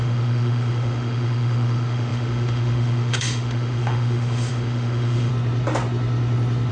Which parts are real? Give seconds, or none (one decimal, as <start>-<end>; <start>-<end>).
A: 5.3-6.7